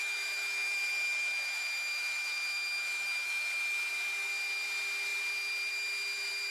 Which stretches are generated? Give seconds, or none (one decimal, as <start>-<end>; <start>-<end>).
0.0-3.9